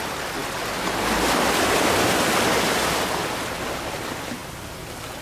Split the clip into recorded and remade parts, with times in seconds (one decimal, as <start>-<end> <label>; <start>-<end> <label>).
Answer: 0.0-5.2 recorded